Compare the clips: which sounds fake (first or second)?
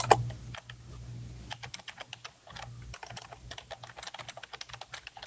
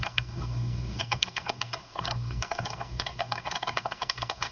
second